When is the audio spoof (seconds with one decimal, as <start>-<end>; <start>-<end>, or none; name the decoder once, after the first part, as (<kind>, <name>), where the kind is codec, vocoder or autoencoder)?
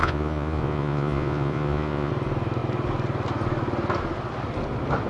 0.0-2.1 (vocoder, Vocos)